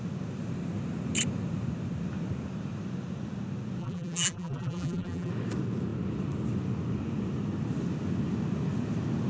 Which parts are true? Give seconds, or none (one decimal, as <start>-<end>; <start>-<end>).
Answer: 0.0-3.8; 5.3-9.3